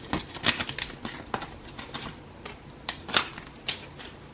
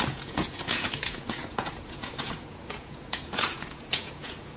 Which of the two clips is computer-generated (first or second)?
second